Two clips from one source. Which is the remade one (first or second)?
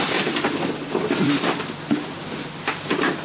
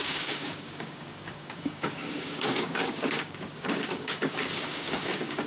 second